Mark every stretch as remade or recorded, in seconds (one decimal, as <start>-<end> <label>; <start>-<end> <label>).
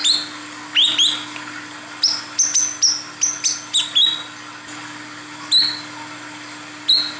0.0-7.2 recorded